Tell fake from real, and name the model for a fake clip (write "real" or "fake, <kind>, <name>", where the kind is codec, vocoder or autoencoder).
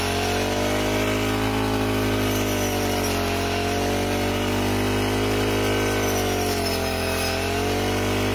real